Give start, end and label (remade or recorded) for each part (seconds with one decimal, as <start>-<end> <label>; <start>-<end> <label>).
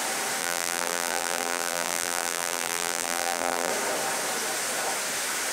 0.0-0.4 recorded; 0.4-3.7 remade; 3.7-5.5 recorded